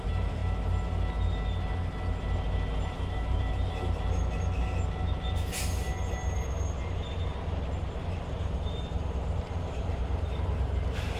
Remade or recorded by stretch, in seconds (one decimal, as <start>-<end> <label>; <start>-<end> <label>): 0.0-0.4 remade; 0.4-2.9 recorded; 2.9-4.2 remade; 4.2-8.2 recorded; 8.2-11.2 remade